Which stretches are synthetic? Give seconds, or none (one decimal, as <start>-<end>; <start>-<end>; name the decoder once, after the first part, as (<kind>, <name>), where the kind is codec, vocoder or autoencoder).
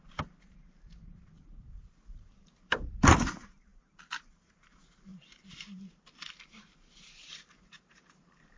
0.0-3.7 (vocoder, BigVGAN v2); 4.2-8.6